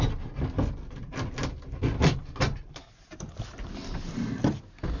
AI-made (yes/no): no